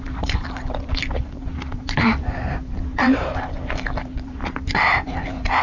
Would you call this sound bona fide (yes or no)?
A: no